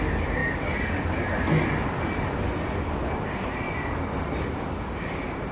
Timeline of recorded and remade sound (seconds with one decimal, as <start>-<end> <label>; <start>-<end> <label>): 0.0-5.5 recorded

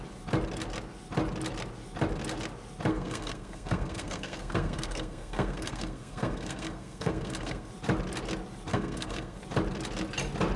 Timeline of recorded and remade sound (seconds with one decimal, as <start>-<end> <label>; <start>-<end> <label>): 0.0-2.9 recorded; 2.9-7.7 remade; 7.7-8.7 recorded; 8.7-9.4 remade; 9.4-10.6 recorded

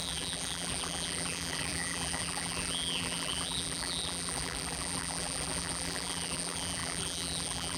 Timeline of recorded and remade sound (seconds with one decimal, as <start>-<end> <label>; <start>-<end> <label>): 0.0-7.8 remade

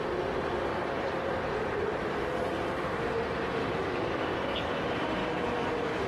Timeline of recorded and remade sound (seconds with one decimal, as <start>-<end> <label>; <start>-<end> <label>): 0.0-0.7 recorded; 0.7-1.3 remade; 1.3-3.6 recorded; 3.6-4.7 remade; 4.7-5.2 recorded; 5.2-6.1 remade

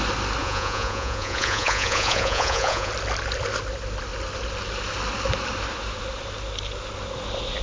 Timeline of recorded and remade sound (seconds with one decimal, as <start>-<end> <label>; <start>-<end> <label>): 0.0-0.4 recorded; 0.4-2.9 remade; 2.9-7.6 recorded

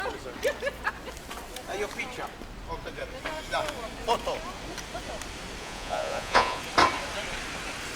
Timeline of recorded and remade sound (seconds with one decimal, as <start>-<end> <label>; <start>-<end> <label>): 0.0-5.6 recorded; 5.6-6.6 remade; 6.6-8.0 recorded

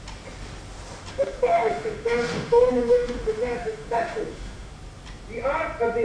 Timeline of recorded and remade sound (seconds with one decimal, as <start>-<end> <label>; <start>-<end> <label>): 0.0-1.1 recorded; 1.1-4.7 remade; 4.7-6.0 recorded

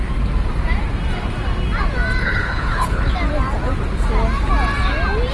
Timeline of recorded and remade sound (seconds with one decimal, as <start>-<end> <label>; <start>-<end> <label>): 0.0-2.2 recorded; 2.2-3.1 remade; 3.1-5.3 recorded